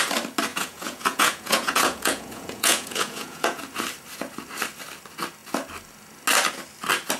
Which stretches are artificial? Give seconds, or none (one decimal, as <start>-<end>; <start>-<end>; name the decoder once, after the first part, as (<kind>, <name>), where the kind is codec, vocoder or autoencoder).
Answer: 0.5-3.6 (vocoder, Vocos)